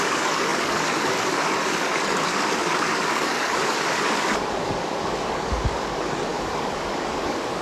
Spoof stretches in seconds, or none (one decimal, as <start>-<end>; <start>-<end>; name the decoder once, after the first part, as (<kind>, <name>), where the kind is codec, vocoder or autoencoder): 0.0-7.6 (codec, DAC)